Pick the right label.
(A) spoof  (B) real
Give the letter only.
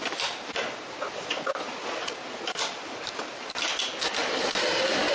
B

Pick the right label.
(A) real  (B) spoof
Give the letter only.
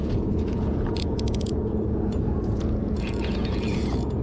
B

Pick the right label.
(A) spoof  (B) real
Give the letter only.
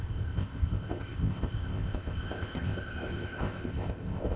A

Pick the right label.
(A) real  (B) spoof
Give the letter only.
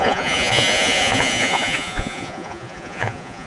B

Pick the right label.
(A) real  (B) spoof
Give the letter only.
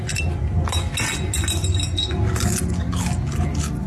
A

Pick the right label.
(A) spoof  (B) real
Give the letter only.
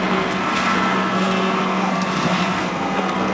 A